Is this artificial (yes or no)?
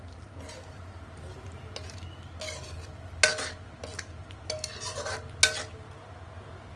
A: no